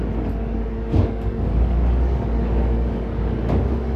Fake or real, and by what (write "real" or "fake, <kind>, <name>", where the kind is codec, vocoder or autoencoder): fake, codec, DAC